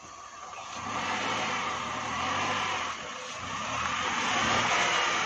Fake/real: real